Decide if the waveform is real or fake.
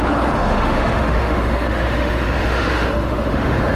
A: fake